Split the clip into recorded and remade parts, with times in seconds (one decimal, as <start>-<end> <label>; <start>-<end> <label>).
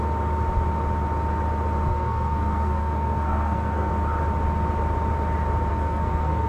0.0-1.9 recorded; 1.9-3.9 remade; 3.9-5.7 recorded; 5.7-6.5 remade